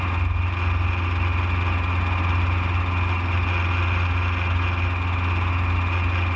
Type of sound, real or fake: real